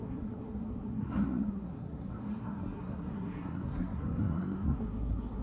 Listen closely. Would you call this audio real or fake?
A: fake